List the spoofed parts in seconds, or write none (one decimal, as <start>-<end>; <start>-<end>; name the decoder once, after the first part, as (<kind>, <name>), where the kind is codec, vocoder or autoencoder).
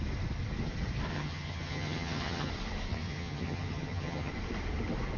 1.1-2.5 (vocoder, HiFi-GAN); 2.9-4.3